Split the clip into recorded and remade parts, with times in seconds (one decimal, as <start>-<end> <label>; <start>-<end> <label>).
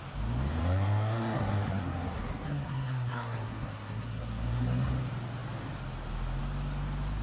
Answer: 0.0-0.6 recorded; 0.6-4.9 remade; 4.9-7.2 recorded